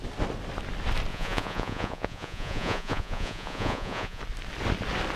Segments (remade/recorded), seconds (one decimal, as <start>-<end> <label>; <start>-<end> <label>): 0.0-1.1 recorded; 1.1-4.2 remade; 4.2-5.2 recorded